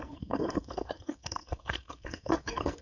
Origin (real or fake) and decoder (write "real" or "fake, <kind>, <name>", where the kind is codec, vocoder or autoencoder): fake, codec, SNAC